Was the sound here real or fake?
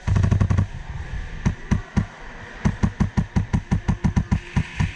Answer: real